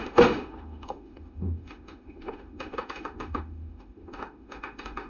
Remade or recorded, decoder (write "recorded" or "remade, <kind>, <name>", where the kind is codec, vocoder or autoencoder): remade, autoencoder, DAC-VAE